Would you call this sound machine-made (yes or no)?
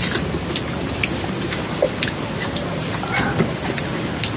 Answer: no